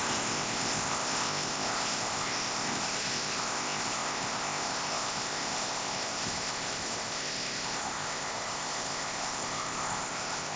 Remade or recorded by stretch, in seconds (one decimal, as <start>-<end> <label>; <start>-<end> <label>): 0.0-10.6 remade